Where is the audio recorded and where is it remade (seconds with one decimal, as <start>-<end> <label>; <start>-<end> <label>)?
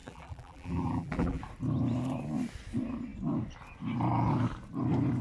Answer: 0.0-1.4 remade; 1.4-5.2 recorded